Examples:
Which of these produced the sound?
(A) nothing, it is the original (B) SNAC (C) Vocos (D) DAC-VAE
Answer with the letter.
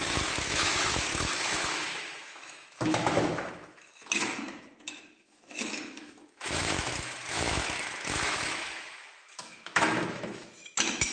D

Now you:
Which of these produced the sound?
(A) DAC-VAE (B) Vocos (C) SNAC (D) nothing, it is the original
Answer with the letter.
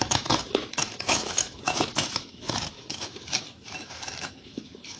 A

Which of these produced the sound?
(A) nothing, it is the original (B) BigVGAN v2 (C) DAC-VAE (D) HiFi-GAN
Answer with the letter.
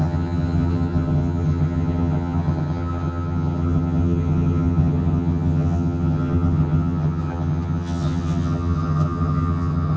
D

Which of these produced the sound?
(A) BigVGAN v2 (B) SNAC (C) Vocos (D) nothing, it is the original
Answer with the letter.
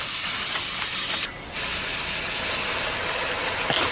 D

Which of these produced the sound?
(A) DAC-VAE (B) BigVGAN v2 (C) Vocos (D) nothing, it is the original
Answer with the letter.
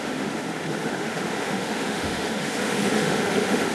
A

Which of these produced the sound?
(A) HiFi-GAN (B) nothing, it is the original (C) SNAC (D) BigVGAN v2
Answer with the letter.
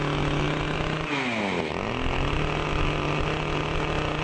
B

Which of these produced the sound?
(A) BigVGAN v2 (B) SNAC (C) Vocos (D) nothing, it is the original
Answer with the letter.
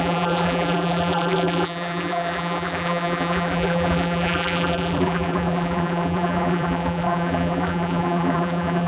A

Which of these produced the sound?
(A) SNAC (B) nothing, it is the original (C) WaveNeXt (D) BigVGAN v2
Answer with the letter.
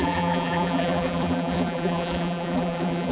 D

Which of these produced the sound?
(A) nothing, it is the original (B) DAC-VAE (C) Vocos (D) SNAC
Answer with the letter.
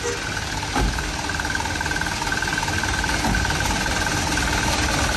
A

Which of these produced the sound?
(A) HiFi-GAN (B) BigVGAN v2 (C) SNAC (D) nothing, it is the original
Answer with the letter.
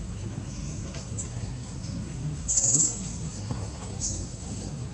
C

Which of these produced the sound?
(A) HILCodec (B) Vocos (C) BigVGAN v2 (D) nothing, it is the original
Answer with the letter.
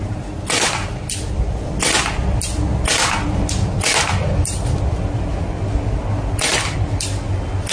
D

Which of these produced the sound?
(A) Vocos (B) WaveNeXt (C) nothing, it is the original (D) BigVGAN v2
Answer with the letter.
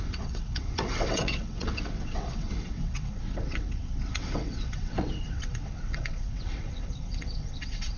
B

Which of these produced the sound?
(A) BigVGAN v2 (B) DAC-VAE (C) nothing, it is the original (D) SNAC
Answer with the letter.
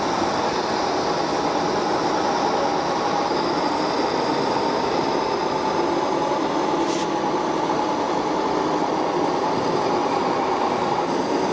C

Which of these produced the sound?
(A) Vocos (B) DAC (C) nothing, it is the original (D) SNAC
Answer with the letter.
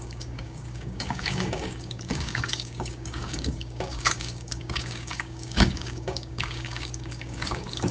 B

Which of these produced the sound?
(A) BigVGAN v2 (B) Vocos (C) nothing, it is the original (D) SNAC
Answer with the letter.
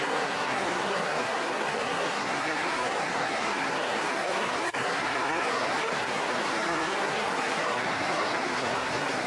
D